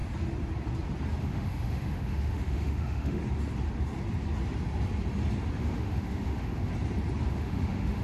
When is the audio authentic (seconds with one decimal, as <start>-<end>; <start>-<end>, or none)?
0.0-1.2; 3.2-5.6; 6.7-7.3